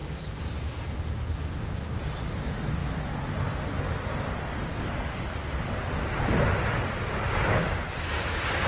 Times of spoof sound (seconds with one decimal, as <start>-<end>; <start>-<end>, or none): 4.7-5.3